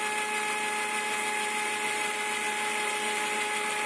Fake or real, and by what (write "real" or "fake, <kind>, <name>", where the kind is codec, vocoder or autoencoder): real